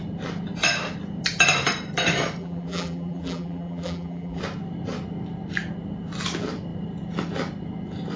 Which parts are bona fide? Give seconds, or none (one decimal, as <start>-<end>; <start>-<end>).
0.0-2.4; 4.4-8.2